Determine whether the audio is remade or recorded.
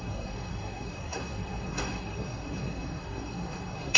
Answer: remade